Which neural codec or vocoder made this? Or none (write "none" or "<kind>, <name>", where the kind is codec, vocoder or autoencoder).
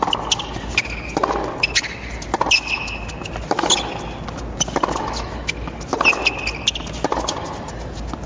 none